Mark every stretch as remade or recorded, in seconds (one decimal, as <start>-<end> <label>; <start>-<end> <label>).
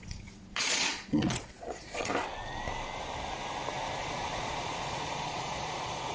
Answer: 0.0-2.1 remade; 2.1-4.0 recorded; 4.0-6.1 remade